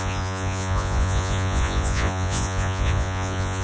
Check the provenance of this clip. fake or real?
fake